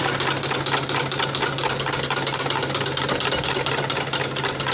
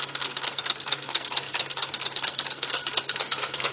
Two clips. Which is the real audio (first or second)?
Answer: first